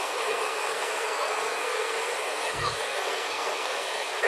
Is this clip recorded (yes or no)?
no